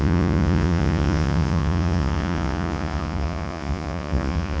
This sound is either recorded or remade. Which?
remade